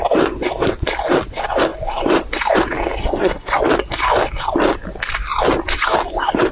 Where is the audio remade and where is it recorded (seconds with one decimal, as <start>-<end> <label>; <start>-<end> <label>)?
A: 0.0-3.0 recorded; 3.0-3.6 remade; 3.6-6.5 recorded